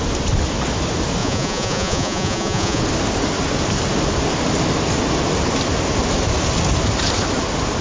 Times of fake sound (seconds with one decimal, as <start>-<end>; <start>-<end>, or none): 1.2-2.8